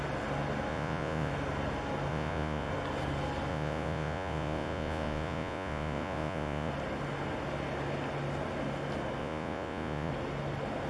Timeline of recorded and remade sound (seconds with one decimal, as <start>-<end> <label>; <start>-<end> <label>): 0.0-0.7 recorded; 0.7-1.3 remade; 1.3-2.1 recorded; 2.1-2.7 remade; 2.7-3.5 recorded; 3.5-6.7 remade; 6.7-9.2 recorded; 9.2-10.1 remade; 10.1-10.9 recorded